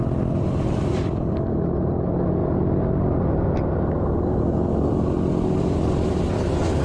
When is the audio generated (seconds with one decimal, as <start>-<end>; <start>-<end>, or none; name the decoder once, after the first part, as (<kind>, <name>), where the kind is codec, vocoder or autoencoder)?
none